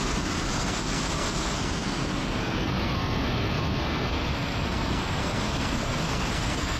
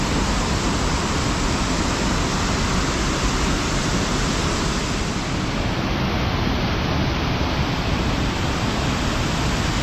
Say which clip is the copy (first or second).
first